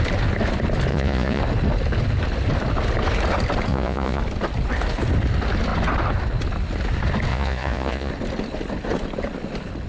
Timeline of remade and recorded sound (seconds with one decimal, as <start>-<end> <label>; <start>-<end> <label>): 0.0-0.9 recorded; 0.9-1.4 remade; 1.4-3.7 recorded; 3.7-4.2 remade; 4.2-7.3 recorded; 7.3-8.1 remade; 8.1-9.9 recorded